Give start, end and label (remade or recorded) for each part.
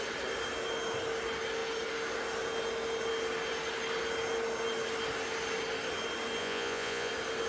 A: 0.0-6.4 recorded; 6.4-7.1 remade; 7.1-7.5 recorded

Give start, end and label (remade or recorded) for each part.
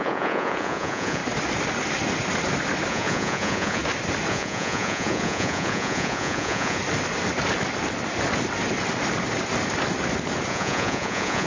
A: 0.0-1.2 remade; 1.2-2.9 recorded; 2.9-3.8 remade; 3.8-4.3 recorded; 4.3-6.8 remade; 6.8-10.5 recorded; 10.5-11.5 remade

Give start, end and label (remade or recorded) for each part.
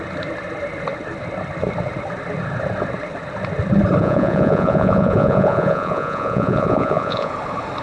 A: 0.0-4.0 recorded; 4.0-7.3 remade; 7.3-7.8 recorded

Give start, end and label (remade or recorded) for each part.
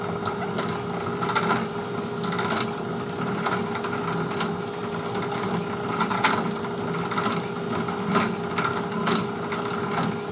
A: 0.0-10.3 recorded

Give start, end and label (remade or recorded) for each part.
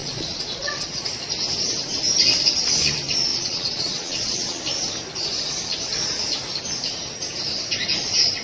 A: 0.0-1.1 remade; 1.1-3.3 recorded; 3.3-4.6 remade; 4.6-8.4 recorded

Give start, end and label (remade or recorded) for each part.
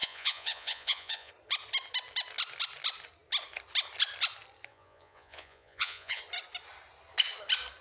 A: 0.0-1.3 remade; 1.3-4.7 recorded; 4.7-6.2 remade; 6.2-7.8 recorded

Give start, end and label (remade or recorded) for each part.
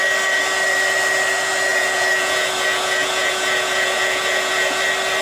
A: 0.0-1.7 recorded; 1.7-4.8 remade; 4.8-5.2 recorded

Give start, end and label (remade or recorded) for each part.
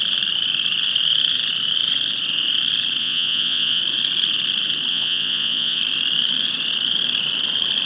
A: 0.0-3.0 recorded; 3.0-3.8 remade; 3.8-4.9 recorded; 4.9-5.8 remade; 5.8-7.9 recorded